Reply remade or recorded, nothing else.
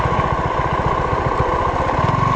recorded